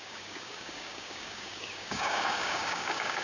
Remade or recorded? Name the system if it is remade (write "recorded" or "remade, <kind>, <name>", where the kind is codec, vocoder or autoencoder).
remade, codec, DAC